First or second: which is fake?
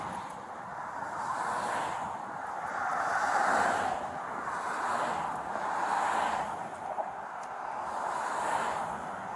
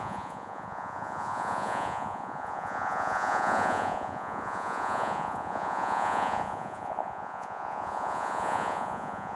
second